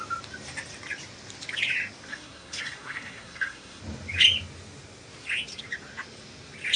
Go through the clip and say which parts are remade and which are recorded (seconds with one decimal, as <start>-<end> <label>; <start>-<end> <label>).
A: 0.0-2.1 recorded; 2.1-3.8 remade; 3.8-6.8 recorded